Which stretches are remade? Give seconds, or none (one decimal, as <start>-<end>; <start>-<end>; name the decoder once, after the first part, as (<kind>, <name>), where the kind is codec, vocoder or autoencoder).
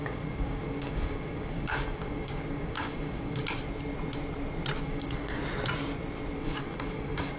0.0-3.4 (codec, DAC); 4.8-5.4; 6.4-7.4